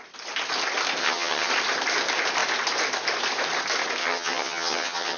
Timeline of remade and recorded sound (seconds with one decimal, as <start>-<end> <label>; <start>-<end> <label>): 0.0-1.0 recorded; 1.0-1.5 remade; 1.5-4.0 recorded; 4.0-5.2 remade